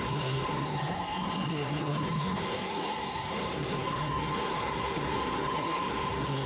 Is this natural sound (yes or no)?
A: no